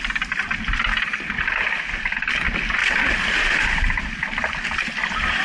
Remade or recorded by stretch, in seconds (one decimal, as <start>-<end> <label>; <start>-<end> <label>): 0.0-5.4 recorded